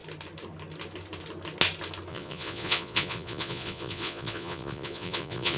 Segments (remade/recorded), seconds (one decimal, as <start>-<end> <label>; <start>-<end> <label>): 0.0-2.1 recorded; 2.1-5.6 remade